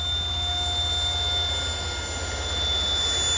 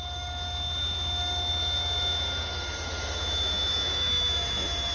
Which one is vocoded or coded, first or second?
second